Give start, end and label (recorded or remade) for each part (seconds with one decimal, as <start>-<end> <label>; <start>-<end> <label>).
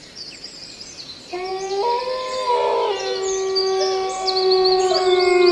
0.0-1.5 remade; 1.5-4.8 recorded; 4.8-5.5 remade